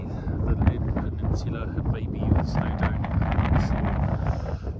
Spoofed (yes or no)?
no